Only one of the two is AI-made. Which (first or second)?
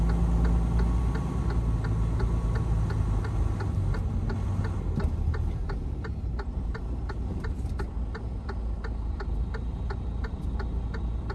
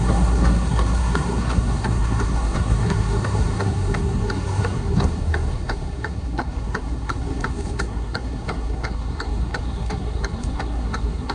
second